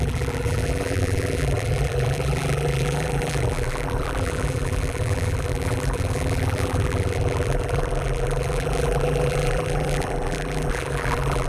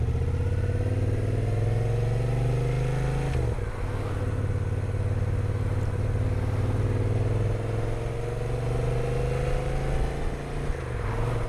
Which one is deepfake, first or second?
first